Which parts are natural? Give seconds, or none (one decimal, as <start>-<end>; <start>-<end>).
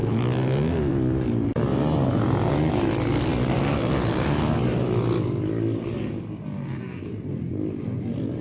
0.0-8.4